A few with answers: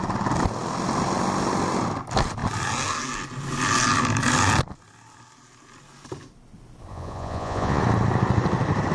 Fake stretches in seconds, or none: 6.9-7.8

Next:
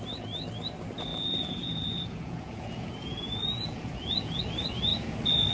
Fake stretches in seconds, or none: 1.1-4.4

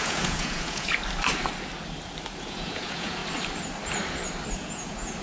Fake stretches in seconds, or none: 0.0-1.0; 2.4-3.2; 4.5-5.2